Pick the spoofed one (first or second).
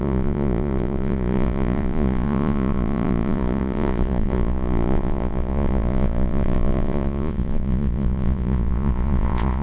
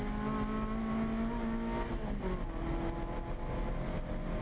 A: first